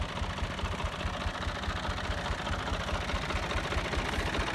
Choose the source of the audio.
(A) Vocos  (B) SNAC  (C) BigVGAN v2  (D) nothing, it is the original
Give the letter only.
D